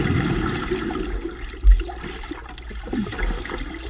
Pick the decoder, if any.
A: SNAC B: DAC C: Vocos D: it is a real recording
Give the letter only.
D